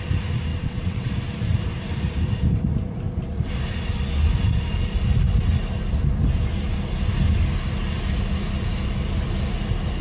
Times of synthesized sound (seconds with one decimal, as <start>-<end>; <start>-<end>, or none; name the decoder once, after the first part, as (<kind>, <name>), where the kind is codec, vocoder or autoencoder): 0.5-1.1 (vocoder, WaveNeXt)